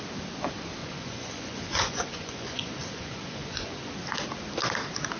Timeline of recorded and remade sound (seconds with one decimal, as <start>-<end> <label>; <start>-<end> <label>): 0.0-0.8 recorded; 0.8-3.9 remade; 3.9-5.2 recorded